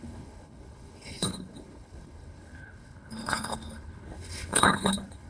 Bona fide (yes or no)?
no